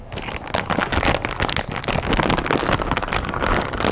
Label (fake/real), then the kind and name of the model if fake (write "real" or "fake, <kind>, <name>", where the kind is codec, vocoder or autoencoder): real